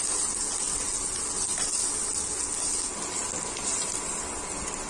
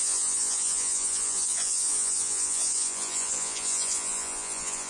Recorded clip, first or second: first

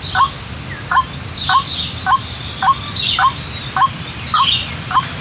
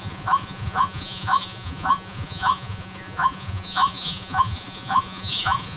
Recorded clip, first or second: first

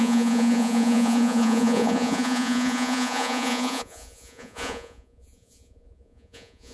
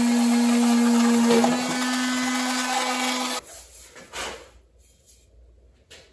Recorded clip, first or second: second